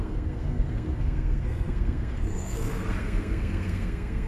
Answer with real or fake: fake